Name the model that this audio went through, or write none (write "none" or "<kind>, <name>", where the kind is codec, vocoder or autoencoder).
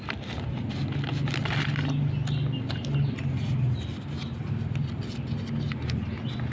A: none